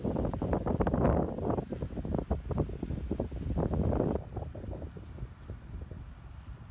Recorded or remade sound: recorded